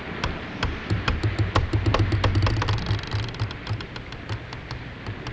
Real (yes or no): yes